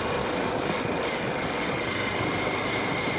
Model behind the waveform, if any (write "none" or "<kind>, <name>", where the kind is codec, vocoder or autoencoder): none